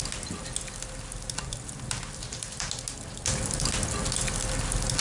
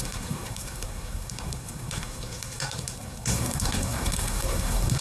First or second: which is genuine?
first